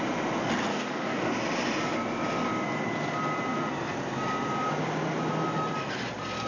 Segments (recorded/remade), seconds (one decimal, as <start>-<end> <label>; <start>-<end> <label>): 0.0-0.7 recorded; 0.7-1.3 remade; 1.3-6.5 recorded